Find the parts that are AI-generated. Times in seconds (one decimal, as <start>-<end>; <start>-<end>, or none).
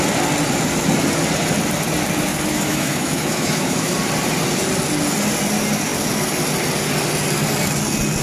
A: 2.3-3.9